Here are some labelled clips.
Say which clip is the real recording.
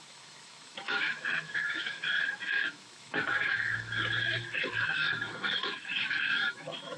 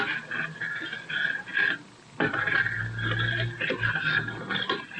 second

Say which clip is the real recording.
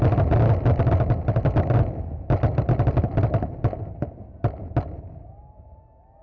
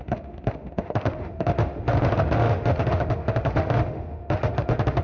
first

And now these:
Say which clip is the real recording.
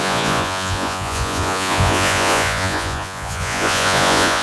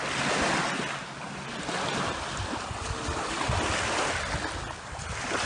second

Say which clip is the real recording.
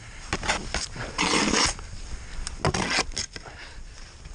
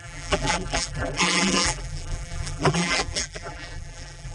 first